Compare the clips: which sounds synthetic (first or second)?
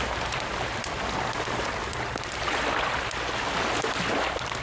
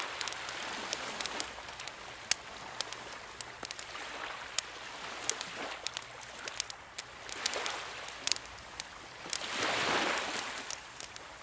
first